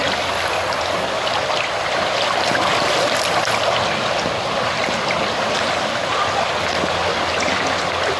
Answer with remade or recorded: recorded